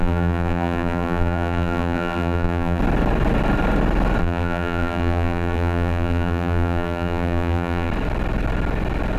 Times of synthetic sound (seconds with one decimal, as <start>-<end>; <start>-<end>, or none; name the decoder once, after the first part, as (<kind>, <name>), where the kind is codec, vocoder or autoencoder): 0.0-2.8 (vocoder, BigVGAN v2); 4.2-7.9